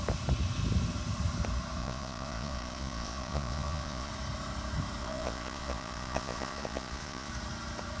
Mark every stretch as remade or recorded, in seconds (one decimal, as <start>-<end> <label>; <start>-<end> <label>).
0.0-1.8 recorded; 1.8-4.1 remade; 4.1-5.0 recorded; 5.0-7.3 remade; 7.3-8.0 recorded